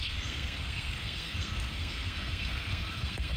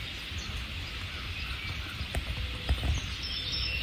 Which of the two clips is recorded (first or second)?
second